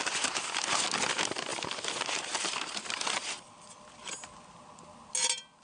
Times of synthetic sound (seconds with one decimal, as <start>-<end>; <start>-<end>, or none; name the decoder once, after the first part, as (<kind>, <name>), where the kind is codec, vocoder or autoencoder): none

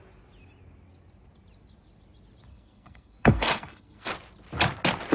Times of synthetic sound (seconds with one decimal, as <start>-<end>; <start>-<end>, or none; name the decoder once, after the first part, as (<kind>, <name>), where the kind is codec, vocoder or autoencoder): 2.5-4.1 (codec, SNAC)